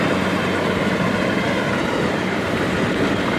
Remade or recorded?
remade